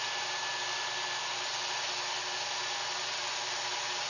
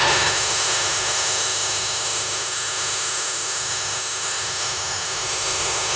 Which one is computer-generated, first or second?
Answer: second